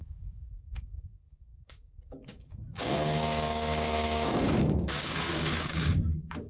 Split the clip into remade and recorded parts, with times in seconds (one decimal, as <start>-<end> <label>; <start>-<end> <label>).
0.0-6.5 remade